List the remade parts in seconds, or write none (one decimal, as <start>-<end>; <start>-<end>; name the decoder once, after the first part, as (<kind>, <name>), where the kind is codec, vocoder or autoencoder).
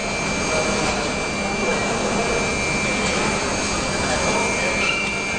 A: none